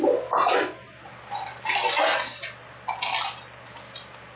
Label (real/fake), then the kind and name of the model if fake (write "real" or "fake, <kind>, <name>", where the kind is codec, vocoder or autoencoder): real